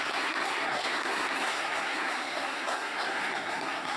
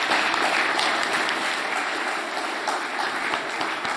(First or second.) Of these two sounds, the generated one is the first